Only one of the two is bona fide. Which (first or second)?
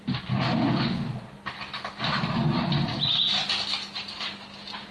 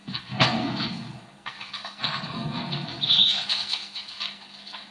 first